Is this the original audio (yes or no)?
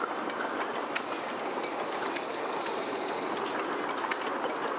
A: yes